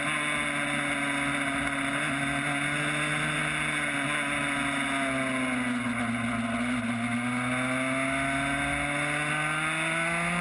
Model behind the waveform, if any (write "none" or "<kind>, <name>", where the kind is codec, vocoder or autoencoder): none